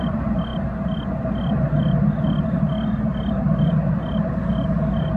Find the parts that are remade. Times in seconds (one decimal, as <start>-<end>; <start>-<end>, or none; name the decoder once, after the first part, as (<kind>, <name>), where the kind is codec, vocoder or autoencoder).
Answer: none